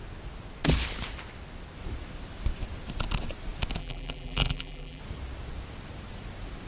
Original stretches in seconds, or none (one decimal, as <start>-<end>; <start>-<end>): 0.0-3.8; 5.0-6.7